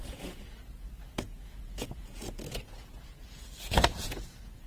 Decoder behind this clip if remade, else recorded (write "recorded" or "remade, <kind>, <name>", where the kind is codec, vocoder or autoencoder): remade, vocoder, Vocos